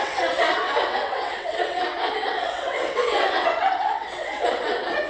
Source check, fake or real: fake